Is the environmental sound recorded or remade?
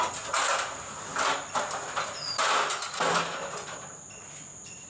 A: recorded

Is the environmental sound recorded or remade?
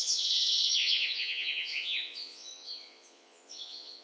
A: remade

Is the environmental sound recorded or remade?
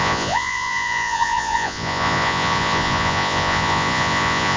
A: remade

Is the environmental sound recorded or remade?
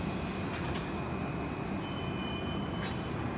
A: recorded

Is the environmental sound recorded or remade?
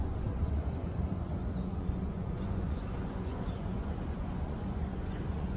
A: remade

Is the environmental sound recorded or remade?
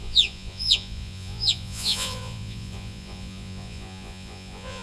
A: remade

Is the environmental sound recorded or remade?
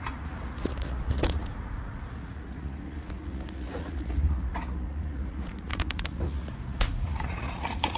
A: remade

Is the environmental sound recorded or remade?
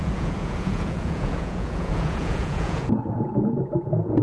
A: remade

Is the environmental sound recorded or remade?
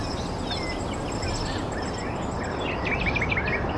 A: recorded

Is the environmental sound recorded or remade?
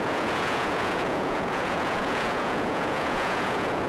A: remade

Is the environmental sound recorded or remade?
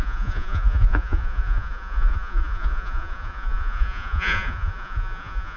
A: remade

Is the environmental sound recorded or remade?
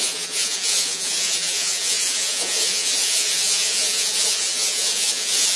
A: remade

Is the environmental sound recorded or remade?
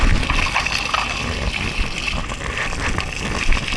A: recorded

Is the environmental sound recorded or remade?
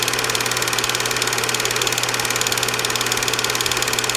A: recorded